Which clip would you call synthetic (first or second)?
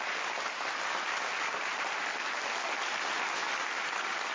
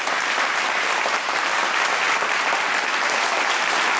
first